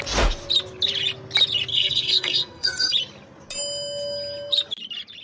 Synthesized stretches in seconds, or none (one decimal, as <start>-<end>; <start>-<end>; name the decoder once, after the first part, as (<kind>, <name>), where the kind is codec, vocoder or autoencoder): 1.7-2.9 (codec, SNAC)